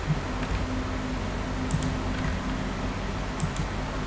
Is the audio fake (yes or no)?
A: no